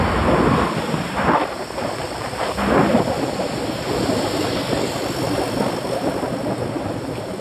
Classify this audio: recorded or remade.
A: recorded